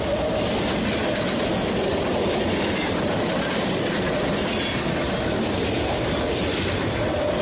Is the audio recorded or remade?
recorded